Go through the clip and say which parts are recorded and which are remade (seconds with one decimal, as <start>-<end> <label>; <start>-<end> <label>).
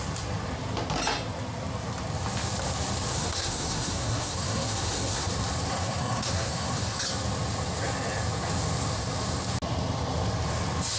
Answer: 0.0-3.1 recorded; 3.1-5.3 remade; 5.3-5.7 recorded; 5.7-7.0 remade; 7.0-11.0 recorded